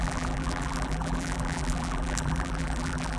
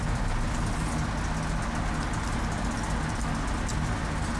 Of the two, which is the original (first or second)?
second